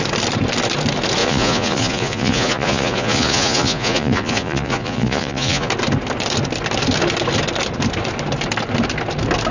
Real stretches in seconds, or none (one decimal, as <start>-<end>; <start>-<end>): 0.0-1.2; 5.7-9.5